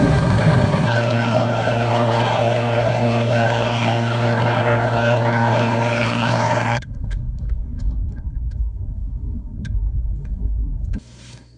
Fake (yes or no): yes